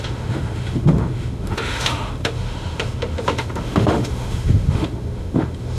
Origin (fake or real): fake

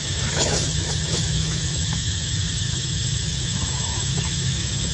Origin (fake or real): fake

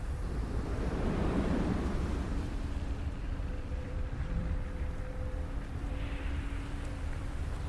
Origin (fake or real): fake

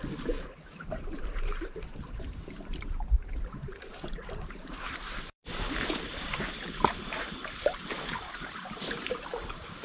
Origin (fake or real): fake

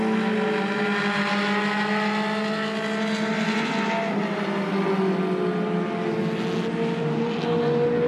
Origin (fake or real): real